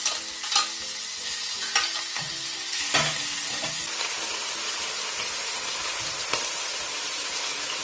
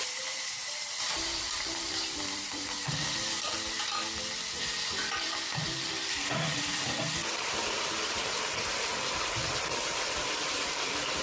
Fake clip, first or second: second